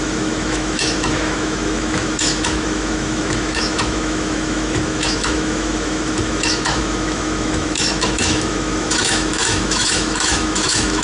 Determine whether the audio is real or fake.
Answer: fake